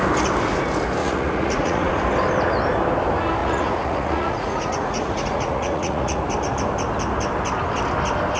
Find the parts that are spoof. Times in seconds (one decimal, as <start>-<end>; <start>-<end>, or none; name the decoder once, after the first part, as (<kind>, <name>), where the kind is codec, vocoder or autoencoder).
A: 1.0-2.0 (vocoder, Vocos); 3.4-6.2